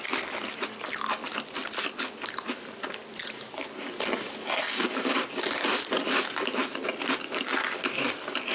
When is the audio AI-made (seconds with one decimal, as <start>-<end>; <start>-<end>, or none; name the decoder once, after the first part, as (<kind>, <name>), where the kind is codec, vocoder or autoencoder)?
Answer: none